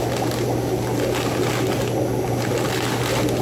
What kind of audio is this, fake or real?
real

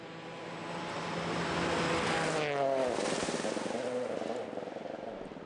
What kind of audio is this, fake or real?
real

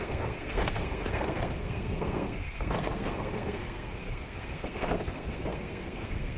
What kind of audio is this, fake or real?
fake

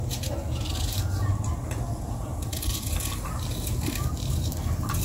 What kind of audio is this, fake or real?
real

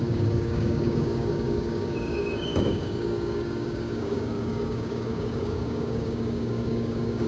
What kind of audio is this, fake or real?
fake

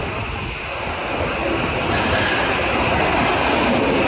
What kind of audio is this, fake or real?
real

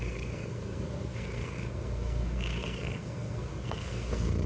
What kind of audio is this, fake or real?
fake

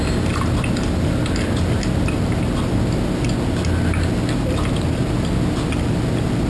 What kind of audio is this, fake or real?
real